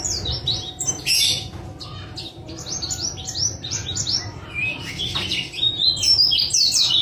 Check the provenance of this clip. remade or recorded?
remade